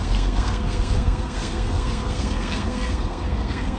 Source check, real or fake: fake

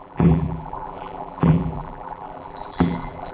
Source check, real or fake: fake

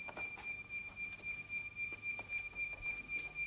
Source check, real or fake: real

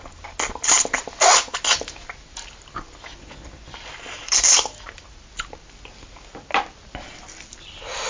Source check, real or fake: real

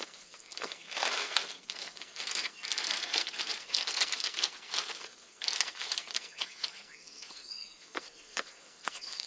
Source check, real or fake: fake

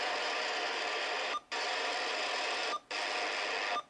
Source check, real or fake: real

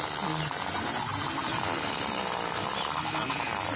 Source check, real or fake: real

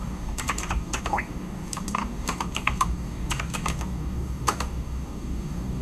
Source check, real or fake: fake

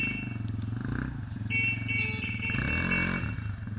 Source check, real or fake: real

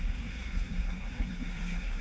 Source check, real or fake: fake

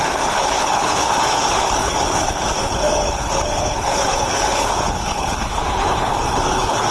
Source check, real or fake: fake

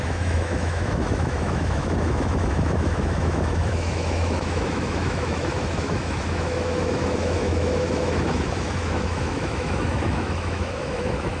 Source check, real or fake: fake